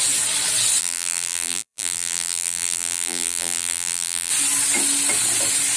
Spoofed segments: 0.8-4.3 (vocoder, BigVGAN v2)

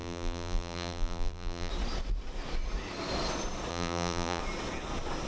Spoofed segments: 0.0-1.7 (vocoder, BigVGAN v2); 3.7-4.4

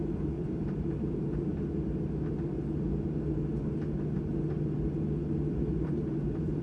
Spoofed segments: 0.0-1.5 (vocoder, BigVGAN v2); 5.5-6.6